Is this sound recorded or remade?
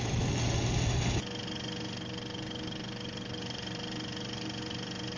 recorded